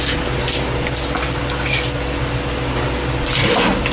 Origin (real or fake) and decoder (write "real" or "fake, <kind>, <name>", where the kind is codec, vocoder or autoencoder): real